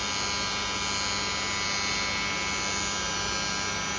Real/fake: real